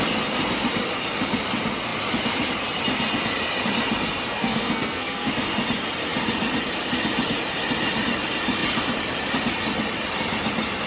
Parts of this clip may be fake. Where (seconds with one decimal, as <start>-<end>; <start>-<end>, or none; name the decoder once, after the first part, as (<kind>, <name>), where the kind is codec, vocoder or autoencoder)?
4.3-5.3 (codec, SNAC)

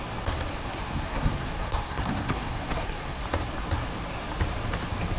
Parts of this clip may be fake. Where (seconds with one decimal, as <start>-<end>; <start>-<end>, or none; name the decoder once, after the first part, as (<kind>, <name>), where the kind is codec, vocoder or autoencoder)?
0.5-3.2 (codec, SNAC)

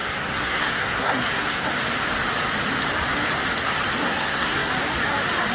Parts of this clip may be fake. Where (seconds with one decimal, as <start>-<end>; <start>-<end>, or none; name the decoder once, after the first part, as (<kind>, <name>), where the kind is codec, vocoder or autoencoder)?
0.0-1.7 (codec, SNAC); 4.0-4.7